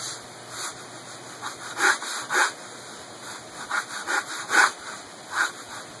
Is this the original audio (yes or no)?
yes